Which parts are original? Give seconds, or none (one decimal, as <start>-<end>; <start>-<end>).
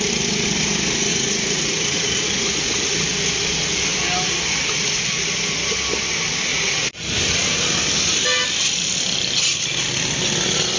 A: 0.0-1.1; 2.9-6.5; 7.1-10.8